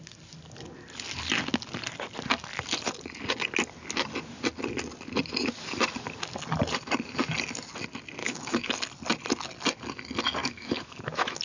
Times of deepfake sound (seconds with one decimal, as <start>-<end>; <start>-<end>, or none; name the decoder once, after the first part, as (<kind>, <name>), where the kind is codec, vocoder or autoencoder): 8.2-8.7 (autoencoder, DAC-VAE); 10.4-11.4